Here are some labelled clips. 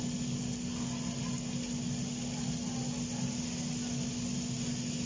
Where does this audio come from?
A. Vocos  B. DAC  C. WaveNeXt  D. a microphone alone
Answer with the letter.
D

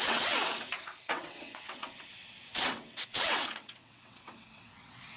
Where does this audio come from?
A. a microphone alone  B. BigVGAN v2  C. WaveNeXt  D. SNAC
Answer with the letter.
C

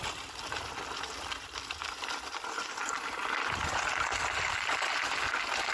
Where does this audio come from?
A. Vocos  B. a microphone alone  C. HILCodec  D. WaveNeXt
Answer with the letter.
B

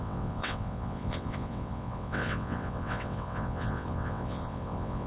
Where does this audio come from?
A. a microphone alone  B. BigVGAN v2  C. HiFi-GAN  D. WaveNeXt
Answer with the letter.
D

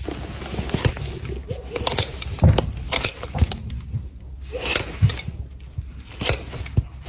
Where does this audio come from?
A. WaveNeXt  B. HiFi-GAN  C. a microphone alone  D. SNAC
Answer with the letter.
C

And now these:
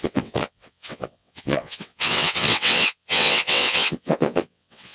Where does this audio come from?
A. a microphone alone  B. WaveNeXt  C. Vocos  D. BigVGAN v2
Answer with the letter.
B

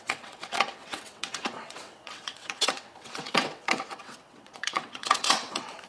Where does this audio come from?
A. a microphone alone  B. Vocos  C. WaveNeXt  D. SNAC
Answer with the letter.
C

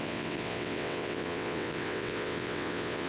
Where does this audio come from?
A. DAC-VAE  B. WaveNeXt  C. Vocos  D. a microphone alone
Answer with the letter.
B